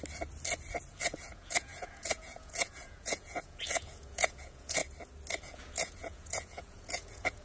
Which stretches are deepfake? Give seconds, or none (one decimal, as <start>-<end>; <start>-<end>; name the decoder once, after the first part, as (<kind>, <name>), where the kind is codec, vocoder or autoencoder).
0.9-4.8 (vocoder, Vocos); 5.4-7.4